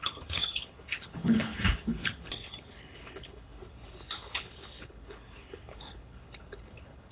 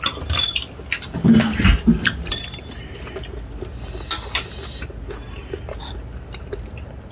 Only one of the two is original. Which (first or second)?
second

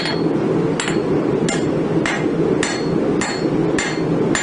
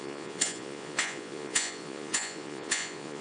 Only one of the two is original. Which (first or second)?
first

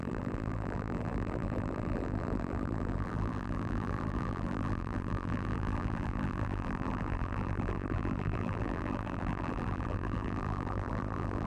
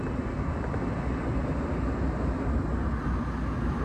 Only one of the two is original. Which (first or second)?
second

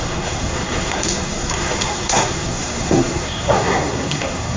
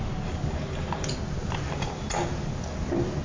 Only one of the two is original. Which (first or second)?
second